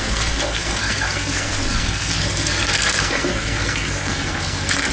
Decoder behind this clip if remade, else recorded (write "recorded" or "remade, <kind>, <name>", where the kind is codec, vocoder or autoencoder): remade, codec, SNAC